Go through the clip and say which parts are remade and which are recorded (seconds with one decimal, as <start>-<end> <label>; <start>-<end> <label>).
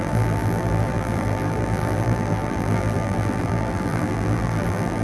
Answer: 0.0-5.0 remade